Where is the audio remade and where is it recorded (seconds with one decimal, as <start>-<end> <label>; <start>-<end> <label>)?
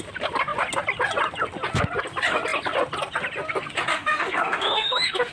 0.0-3.9 recorded; 3.9-5.3 remade